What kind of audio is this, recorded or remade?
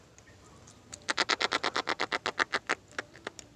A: recorded